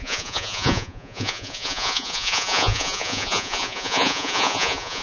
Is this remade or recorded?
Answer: remade